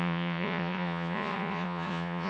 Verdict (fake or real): fake